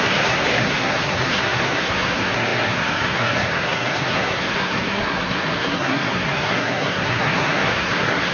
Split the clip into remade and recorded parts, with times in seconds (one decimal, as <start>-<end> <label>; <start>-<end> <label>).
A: 0.0-8.3 remade

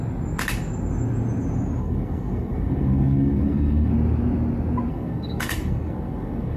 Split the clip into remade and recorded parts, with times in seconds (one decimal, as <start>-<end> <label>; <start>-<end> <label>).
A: 0.0-1.8 recorded; 1.8-3.9 remade; 3.9-4.9 recorded; 4.9-6.6 remade

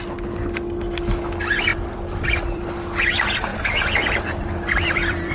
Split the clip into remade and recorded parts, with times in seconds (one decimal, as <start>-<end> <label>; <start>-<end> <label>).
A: 0.0-1.7 recorded; 1.7-2.7 remade; 2.7-3.5 recorded; 3.5-5.3 remade

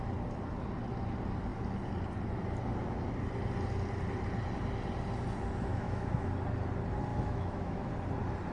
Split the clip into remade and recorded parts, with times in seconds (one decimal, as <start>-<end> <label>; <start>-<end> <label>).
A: 0.0-5.7 recorded; 5.7-6.3 remade; 6.3-7.1 recorded; 7.1-7.9 remade; 7.9-8.5 recorded

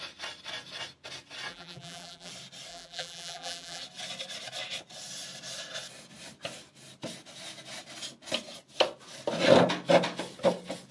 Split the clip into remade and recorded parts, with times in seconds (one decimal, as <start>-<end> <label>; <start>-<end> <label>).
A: 0.0-1.5 recorded; 1.5-2.3 remade; 2.3-2.7 recorded; 2.7-3.8 remade; 3.8-10.9 recorded